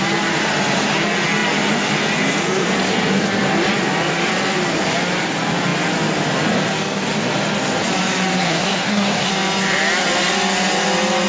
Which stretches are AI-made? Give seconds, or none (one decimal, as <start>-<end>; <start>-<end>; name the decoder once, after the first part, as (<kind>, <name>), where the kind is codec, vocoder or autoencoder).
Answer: 8.4-9.3 (codec, SNAC)

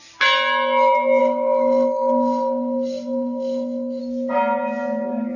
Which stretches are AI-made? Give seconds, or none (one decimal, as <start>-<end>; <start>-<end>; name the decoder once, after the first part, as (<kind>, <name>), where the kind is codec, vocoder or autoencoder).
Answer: 1.2-4.0 (codec, SNAC)